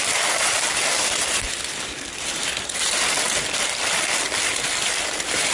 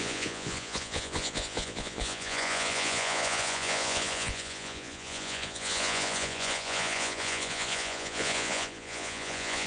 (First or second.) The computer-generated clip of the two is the second